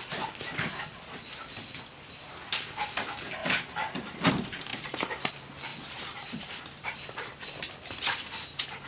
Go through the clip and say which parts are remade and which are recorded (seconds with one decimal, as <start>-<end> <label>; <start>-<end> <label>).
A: 0.0-3.4 recorded; 3.4-4.3 remade; 4.3-4.7 recorded; 4.7-5.3 remade; 5.3-5.7 recorded; 5.7-7.5 remade; 7.5-8.9 recorded